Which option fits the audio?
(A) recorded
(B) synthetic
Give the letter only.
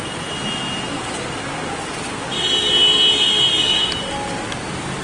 A